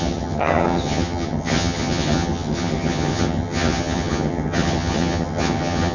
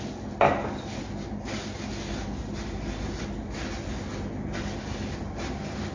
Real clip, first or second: second